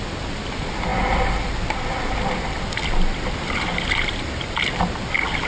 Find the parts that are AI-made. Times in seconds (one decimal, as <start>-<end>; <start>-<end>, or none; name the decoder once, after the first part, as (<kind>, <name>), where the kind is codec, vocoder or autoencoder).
none